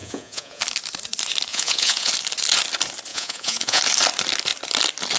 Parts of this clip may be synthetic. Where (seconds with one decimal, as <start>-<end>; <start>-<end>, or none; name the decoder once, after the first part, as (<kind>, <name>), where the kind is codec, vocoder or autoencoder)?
0.0-0.6 (vocoder, Vocos); 1.5-2.1; 3.1-3.8

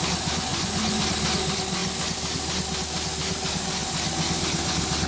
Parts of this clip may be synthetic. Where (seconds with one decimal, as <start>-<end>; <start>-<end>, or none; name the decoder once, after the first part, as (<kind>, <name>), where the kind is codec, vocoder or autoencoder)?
0.5-1.0 (vocoder, Vocos)

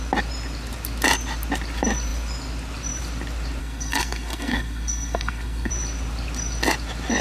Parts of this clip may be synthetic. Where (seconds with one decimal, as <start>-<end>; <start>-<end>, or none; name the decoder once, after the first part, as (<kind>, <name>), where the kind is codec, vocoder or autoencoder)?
3.6-5.7 (codec, SNAC)

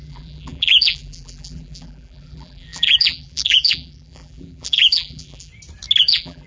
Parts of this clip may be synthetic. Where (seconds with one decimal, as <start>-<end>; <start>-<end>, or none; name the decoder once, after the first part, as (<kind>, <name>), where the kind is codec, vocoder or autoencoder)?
0.0-5.5 (vocoder, BigVGAN v2); 6.0-6.5

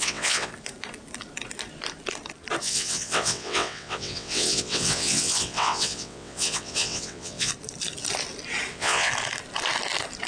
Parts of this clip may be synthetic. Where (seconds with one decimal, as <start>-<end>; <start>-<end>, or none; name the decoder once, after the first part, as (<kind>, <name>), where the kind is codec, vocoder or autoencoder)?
0.0-0.5 (vocoder, WaveNeXt); 2.6-7.5; 8.7-9.1